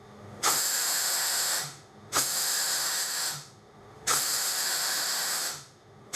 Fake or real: fake